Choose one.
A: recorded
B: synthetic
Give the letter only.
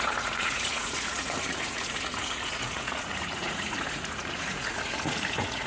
B